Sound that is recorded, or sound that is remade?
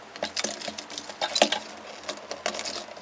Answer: recorded